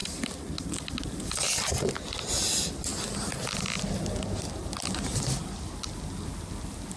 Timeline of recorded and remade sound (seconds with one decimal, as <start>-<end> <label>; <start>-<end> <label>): 0.0-7.0 recorded